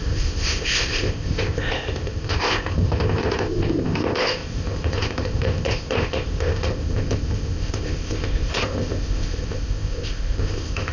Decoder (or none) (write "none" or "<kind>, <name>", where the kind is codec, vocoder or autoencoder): codec, ZipCodec